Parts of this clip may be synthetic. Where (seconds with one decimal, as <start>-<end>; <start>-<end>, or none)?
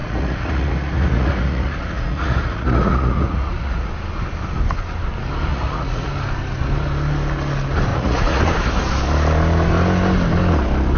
0.0-3.9; 5.5-6.1; 7.9-8.4